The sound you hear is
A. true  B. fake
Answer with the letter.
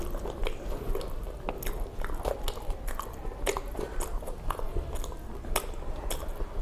A